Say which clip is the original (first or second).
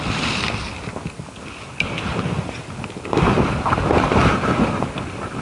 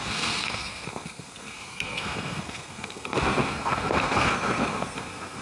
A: first